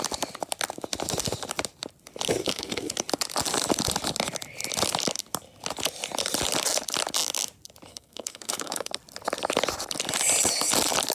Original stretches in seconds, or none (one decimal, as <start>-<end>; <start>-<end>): 0.0-2.4; 2.9-7.9; 8.9-11.1